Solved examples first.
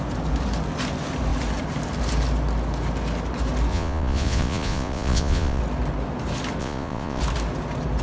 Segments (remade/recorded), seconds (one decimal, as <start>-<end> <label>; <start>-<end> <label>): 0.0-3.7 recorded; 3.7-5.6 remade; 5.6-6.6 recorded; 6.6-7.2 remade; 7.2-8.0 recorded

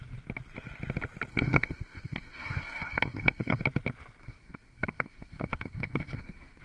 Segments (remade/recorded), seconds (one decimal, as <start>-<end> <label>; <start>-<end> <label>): 0.0-1.3 recorded; 1.3-3.6 remade; 3.6-4.2 recorded; 4.2-6.6 remade

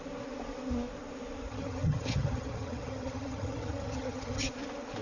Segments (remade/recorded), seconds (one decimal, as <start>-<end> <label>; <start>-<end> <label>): 0.0-1.5 recorded; 1.5-4.5 remade; 4.5-5.0 recorded

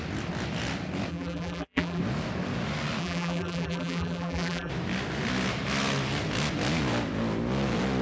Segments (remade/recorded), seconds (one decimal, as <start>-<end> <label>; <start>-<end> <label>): 0.0-1.1 recorded; 1.1-2.0 remade; 2.0-3.0 recorded; 3.0-4.7 remade; 4.7-8.0 recorded